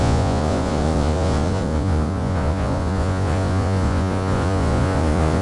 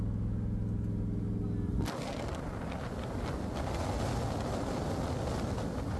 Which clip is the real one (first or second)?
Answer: second